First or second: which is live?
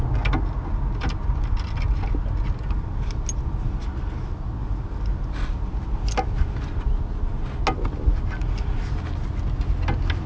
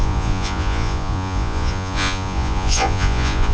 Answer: first